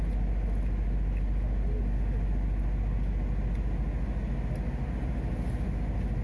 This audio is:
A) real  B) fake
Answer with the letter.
A